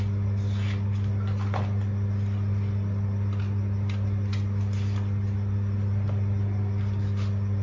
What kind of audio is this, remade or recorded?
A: recorded